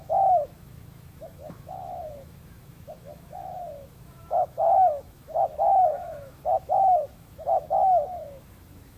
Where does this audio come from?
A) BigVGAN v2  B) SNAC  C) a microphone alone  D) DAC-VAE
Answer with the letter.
D